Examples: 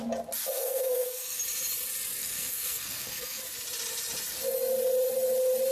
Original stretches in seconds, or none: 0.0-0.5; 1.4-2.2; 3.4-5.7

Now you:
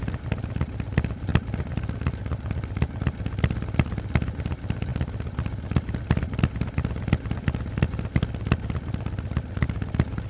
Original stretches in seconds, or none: 0.0-10.3

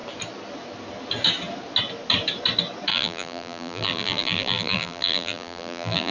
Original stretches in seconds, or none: 0.0-2.9

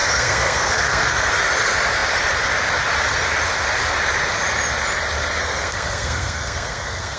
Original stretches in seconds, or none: 1.3-5.4

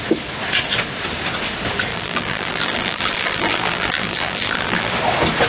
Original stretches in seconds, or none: 0.0-1.9; 4.9-5.5

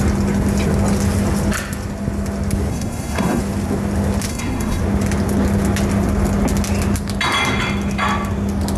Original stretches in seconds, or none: 0.0-2.7; 3.4-4.3; 4.8-8.8

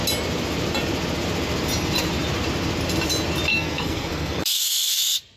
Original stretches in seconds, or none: 0.0-3.5; 5.0-5.4